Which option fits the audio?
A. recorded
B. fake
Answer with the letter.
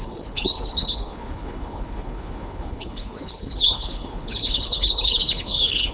B